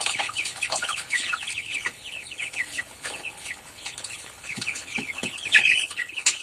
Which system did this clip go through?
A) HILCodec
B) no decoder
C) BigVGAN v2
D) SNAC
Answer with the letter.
A